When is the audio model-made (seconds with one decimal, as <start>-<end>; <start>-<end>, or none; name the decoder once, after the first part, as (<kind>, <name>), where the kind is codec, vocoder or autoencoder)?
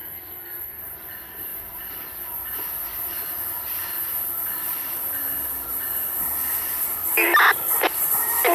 0.0-0.8 (codec, SNAC)